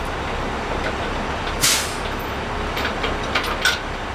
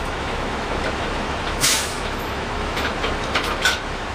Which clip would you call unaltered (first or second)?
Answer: first